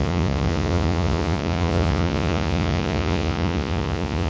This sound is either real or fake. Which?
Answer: fake